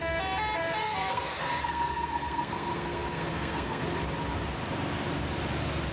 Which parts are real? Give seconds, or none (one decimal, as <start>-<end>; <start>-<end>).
0.0-0.8; 3.8-5.9